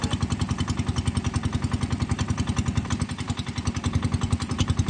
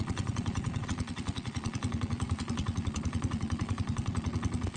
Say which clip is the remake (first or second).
second